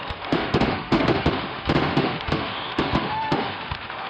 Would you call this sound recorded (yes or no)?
no